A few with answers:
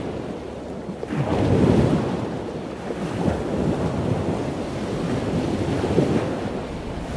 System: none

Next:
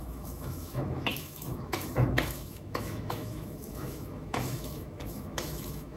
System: autoencoder, DAC-VAE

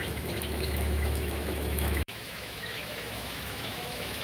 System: autoencoder, DAC-VAE